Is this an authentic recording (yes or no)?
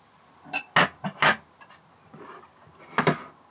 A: yes